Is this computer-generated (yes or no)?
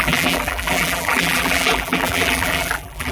yes